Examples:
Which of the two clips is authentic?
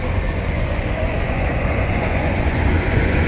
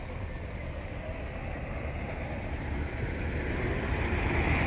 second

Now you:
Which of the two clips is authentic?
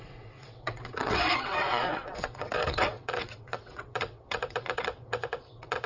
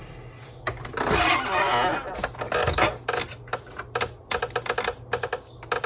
second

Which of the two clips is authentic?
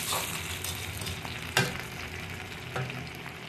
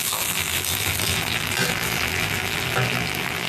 first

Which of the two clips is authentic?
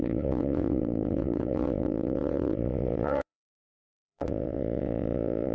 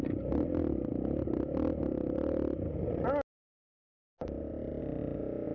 second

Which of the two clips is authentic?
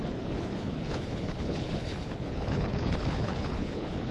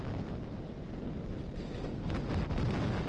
second